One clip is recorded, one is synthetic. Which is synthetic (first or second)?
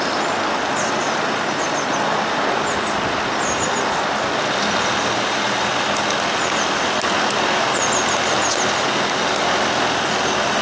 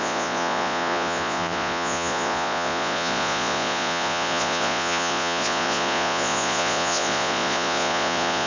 second